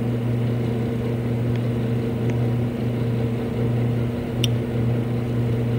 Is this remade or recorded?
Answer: recorded